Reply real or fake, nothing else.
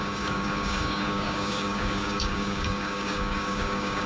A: fake